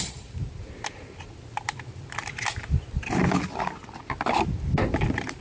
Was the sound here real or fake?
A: real